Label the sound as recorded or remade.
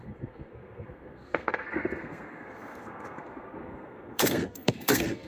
remade